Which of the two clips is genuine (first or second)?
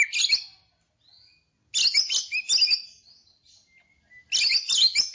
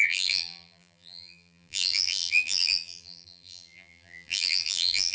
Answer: first